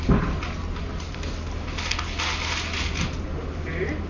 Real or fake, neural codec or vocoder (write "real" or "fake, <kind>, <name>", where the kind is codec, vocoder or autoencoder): real